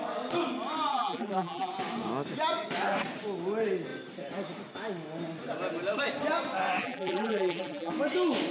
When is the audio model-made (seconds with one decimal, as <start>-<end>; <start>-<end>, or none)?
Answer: 0.9-1.7; 6.8-7.9